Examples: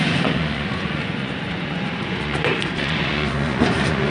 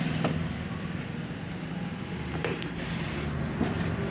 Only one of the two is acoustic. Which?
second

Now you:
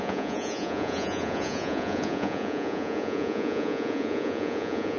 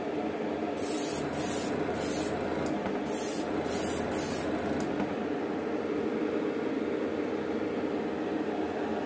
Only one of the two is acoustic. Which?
second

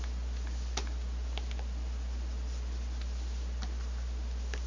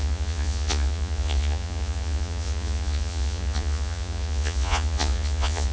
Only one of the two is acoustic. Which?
first